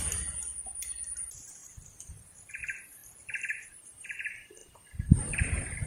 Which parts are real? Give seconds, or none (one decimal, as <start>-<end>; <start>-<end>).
3.0-3.6